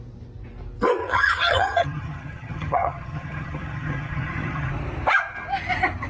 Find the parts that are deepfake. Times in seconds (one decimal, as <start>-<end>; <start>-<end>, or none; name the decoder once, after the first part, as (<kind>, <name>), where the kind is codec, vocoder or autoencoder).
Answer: 1.0-4.7 (vocoder, HiFi-GAN)